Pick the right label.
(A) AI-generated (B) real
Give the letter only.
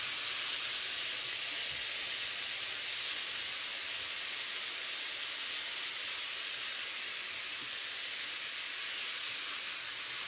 B